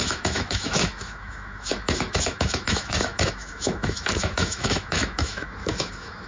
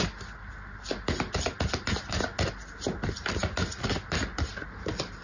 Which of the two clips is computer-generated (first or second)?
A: first